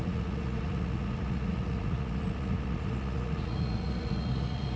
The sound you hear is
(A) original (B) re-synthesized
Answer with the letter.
B